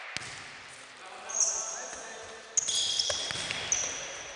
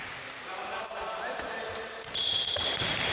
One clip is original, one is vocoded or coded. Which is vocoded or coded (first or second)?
second